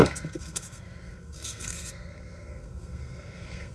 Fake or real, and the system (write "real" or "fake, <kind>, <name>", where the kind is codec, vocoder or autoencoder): fake, codec, SNAC